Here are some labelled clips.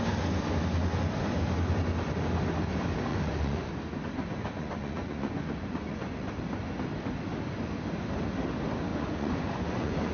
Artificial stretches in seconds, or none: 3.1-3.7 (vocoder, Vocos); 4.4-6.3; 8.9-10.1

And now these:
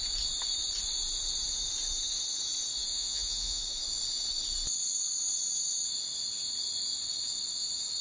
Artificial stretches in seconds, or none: 2.9-3.6 (vocoder, Vocos)

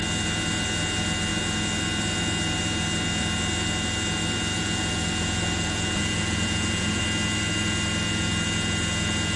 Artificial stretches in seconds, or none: 4.5-7.0 (vocoder, Vocos)

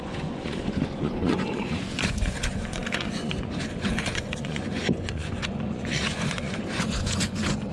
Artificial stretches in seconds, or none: 0.0-7.7 (vocoder, Vocos)